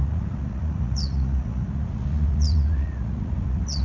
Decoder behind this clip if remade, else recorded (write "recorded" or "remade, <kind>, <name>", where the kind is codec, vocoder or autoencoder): remade, vocoder, Vocos